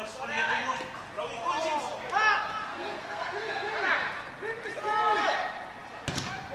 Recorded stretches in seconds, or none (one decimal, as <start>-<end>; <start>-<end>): 0.0-2.7; 3.7-6.5